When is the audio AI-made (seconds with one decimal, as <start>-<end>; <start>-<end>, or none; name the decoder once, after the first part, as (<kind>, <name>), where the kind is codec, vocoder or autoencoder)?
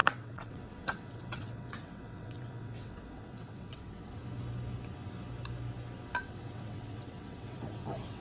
0.0-4.2 (vocoder, WaveNeXt); 6.2-8.2